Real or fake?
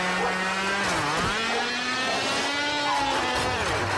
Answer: real